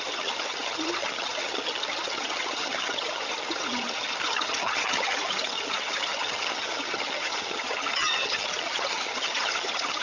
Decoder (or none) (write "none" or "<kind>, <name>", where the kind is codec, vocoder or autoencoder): vocoder, HiFi-GAN